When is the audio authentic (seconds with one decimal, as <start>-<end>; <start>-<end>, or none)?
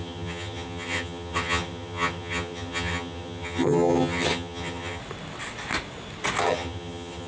5.0-6.4